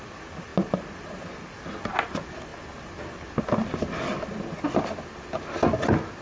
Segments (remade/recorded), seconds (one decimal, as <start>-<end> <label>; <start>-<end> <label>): 0.0-6.2 recorded